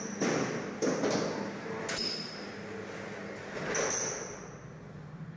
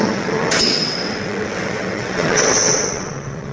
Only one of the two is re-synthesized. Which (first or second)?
second